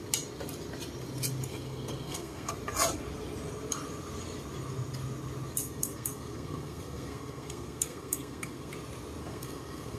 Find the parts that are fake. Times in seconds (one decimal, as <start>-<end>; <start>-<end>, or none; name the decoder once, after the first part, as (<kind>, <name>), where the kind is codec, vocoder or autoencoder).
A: 1.5-2.5 (codec, SNAC); 5.6-8.7; 9.2-10.0